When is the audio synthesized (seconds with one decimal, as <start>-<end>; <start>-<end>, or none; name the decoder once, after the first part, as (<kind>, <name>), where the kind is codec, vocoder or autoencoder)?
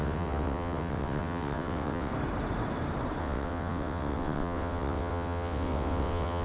0.0-2.1 (vocoder, WaveNeXt); 3.2-6.4